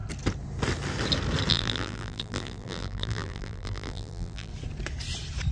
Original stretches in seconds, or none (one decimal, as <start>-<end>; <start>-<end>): 0.0-1.5; 4.5-5.5